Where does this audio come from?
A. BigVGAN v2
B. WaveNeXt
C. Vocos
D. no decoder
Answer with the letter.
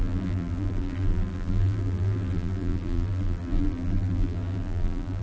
A